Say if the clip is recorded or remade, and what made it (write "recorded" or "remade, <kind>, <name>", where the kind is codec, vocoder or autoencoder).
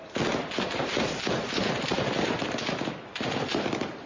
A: recorded